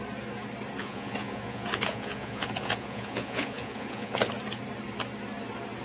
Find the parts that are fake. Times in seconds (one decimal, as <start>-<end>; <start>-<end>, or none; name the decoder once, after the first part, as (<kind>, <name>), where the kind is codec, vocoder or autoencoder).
0.8-4.3 (vocoder, Vocos)